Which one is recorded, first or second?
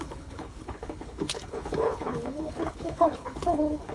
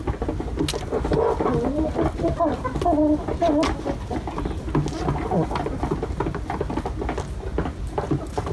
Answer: second